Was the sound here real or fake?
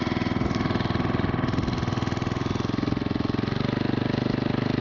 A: real